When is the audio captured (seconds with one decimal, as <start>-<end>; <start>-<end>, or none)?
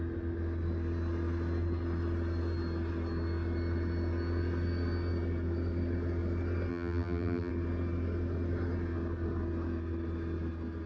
0.0-6.7; 7.5-10.9